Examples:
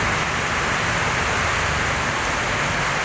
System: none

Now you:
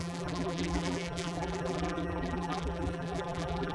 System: vocoder, BigVGAN v2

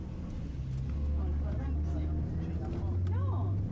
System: none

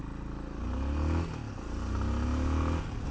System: none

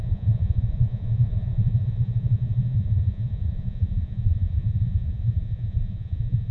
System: vocoder, Vocos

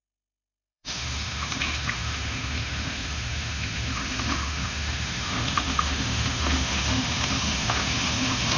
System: autoencoder, DAC-VAE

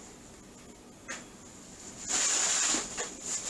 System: none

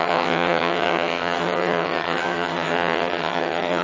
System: vocoder, HiFi-GAN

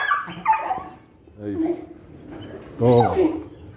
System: none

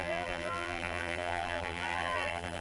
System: vocoder, BigVGAN v2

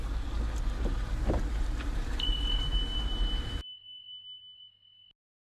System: none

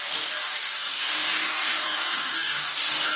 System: codec, DAC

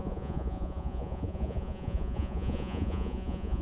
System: vocoder, Vocos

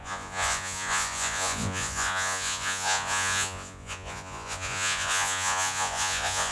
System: vocoder, Vocos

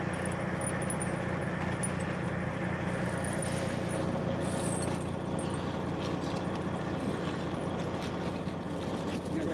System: none